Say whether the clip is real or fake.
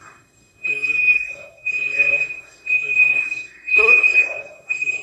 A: fake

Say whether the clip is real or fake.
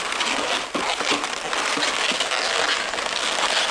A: real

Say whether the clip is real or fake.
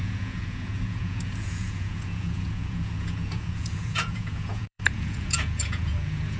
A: fake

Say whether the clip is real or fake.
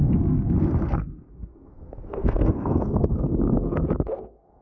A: fake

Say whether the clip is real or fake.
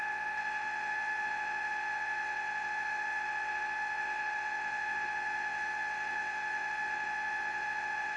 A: fake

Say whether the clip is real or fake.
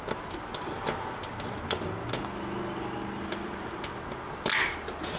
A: real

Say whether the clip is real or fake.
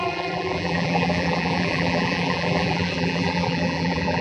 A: fake